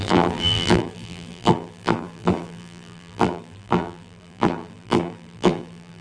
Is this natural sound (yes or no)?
no